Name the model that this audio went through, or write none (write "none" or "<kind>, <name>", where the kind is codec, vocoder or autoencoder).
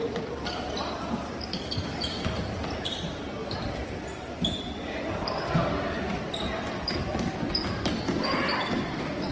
vocoder, BigVGAN v2